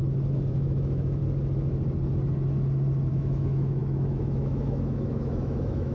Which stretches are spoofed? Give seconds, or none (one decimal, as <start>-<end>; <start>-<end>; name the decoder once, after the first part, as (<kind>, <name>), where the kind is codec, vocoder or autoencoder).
0.5-1.2 (autoencoder, DAC-VAE); 3.1-5.9